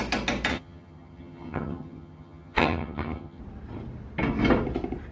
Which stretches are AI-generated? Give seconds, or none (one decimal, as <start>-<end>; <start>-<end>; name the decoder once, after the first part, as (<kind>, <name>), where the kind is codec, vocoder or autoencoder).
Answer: 0.5-3.4 (vocoder, HiFi-GAN)